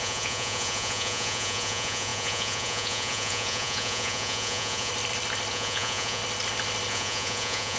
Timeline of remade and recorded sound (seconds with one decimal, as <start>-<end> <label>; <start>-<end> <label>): 0.0-4.9 remade; 4.9-5.5 recorded; 5.5-6.2 remade; 6.2-6.9 recorded; 6.9-7.8 remade

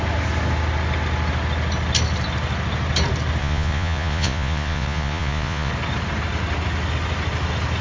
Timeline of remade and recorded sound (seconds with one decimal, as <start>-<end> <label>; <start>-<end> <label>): 0.0-3.4 recorded; 3.4-5.7 remade; 5.7-7.8 recorded

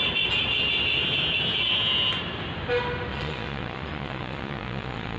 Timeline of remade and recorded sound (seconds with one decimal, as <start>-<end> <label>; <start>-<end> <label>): 0.0-3.1 recorded; 3.1-5.2 remade

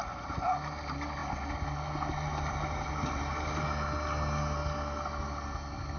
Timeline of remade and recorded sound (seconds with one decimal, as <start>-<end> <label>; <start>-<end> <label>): 0.0-6.0 recorded